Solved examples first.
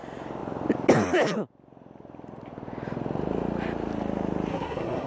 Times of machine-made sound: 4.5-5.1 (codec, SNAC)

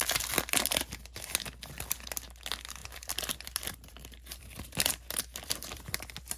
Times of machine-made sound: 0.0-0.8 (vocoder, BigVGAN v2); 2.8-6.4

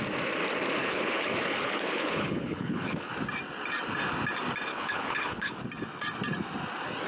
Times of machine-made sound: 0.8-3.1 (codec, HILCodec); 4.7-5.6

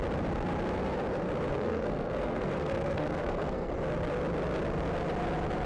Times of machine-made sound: 1.5-3.7 (codec, SNAC)

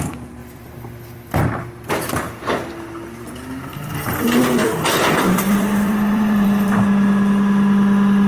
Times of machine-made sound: 0.4-1.4 (vocoder, BigVGAN v2); 3.7-6.7

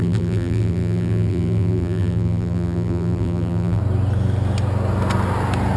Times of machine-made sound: 0.0-3.8 (vocoder, BigVGAN v2)

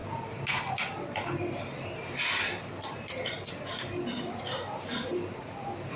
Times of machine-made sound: none